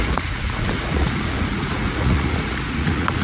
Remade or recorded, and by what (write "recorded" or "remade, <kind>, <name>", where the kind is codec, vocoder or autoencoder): remade, vocoder, Vocos